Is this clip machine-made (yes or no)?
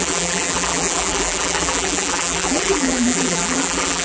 yes